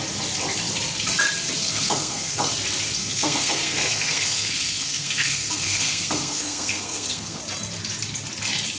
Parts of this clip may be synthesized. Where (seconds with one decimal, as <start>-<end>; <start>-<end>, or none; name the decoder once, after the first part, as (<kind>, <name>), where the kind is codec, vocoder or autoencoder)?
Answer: 1.6-2.5 (codec, SNAC); 3.0-7.4